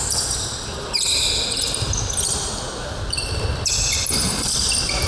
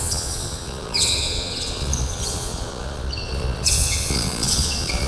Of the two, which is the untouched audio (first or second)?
first